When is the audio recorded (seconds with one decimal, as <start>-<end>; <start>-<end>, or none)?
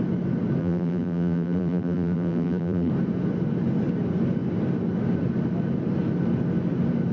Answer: 0.0-0.6; 2.9-7.1